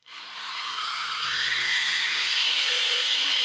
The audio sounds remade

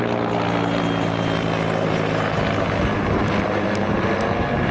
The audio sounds recorded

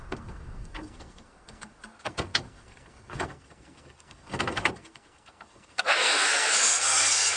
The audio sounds remade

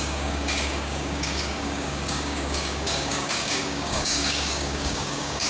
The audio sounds remade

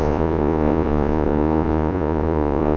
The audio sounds remade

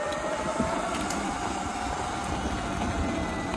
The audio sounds recorded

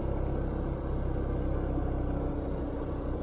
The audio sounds recorded